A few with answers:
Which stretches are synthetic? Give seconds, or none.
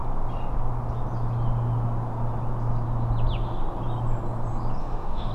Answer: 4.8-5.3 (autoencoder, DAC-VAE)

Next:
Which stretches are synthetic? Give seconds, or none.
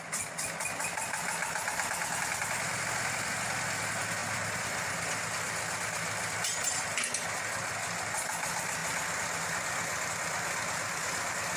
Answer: 2.4-3.3 (vocoder, BigVGAN v2); 4.2-5.3